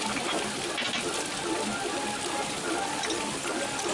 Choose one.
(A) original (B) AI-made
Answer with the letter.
A